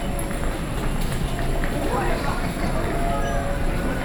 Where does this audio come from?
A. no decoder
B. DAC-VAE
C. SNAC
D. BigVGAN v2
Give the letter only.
A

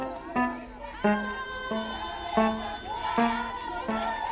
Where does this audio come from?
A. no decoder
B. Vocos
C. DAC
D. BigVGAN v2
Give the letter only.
A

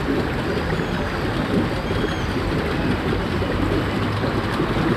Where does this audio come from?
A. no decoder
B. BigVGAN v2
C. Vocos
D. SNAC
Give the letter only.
A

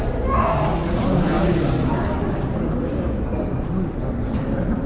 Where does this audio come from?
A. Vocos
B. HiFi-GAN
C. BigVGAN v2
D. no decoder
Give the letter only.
D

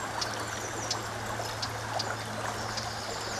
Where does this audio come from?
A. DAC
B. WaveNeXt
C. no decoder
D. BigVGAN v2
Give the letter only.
C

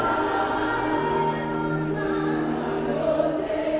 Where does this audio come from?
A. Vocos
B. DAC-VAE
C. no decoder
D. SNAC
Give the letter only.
C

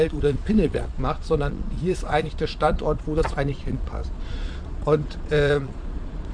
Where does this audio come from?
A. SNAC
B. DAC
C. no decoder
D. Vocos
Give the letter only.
D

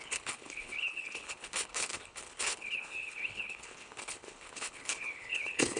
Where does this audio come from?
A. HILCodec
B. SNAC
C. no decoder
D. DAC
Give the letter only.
A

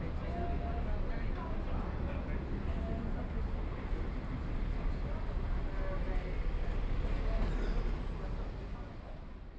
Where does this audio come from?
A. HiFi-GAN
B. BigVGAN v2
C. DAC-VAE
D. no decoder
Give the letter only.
D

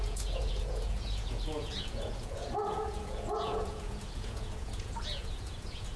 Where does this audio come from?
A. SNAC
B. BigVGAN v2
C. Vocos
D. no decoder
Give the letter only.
C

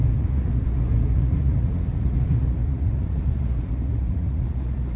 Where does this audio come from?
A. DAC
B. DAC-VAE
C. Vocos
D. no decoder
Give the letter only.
C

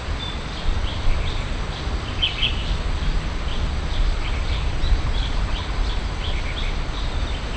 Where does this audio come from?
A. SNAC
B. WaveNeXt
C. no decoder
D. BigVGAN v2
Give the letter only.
C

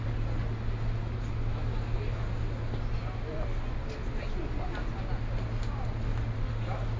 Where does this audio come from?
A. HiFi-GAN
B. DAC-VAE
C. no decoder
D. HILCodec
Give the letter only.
C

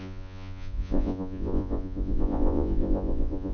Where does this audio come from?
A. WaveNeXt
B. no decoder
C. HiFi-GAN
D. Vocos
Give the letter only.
D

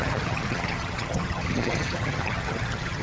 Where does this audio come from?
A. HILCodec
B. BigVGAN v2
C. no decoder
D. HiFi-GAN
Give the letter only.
D